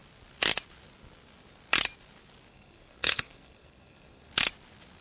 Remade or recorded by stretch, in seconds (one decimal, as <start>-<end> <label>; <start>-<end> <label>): 0.0-2.5 recorded; 2.5-4.3 remade; 4.3-5.0 recorded

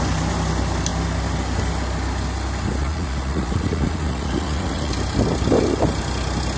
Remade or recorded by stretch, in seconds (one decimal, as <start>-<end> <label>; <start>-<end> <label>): 0.0-2.8 recorded; 2.8-4.9 remade; 4.9-6.6 recorded

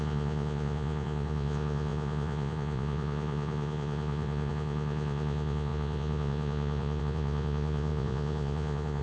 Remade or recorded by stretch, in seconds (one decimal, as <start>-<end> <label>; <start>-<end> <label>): 0.0-9.0 remade